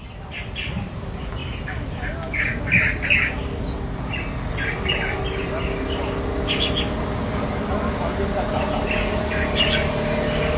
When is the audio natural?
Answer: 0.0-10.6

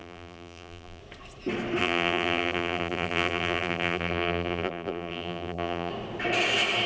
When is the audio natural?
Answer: 1.0-1.8; 5.9-6.9

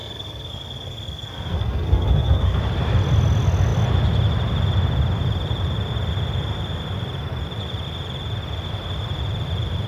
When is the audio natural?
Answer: 2.6-9.9

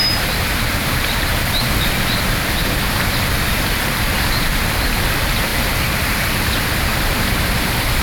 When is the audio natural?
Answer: 1.5-5.5; 7.5-8.0

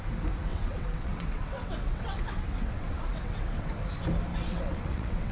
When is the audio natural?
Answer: 0.0-0.5; 3.7-4.3